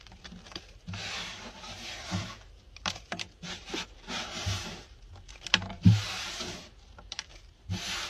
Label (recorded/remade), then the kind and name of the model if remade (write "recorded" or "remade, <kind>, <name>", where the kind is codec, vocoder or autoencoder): remade, vocoder, BigVGAN v2